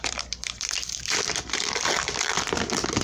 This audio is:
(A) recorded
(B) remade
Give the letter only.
B